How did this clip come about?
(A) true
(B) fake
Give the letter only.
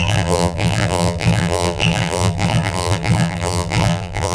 B